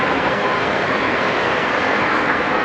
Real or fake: fake